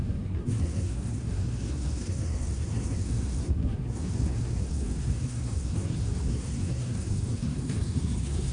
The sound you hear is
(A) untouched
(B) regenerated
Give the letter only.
B